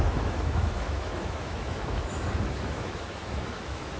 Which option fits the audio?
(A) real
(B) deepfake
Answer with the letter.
B